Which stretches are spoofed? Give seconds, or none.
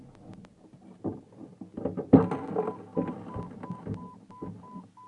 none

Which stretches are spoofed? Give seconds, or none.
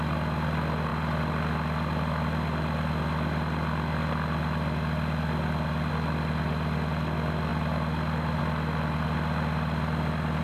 none